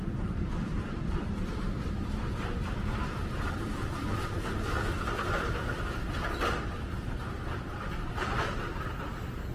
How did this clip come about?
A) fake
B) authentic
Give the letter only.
A